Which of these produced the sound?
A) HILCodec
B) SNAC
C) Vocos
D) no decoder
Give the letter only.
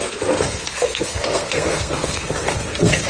B